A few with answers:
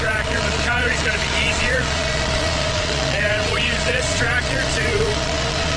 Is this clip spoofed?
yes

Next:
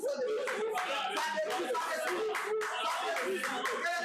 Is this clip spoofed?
no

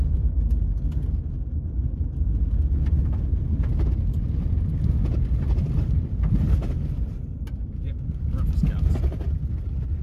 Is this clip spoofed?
no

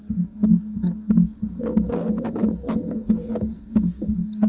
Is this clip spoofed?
yes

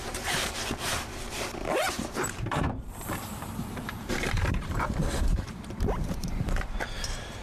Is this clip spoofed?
yes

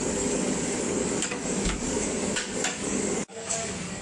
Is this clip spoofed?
yes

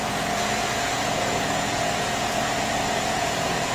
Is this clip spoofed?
yes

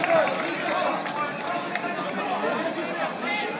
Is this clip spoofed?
no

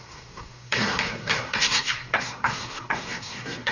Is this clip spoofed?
yes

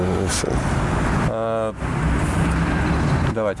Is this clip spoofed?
no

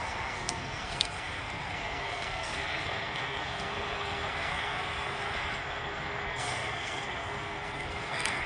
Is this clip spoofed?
yes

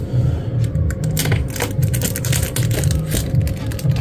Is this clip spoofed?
no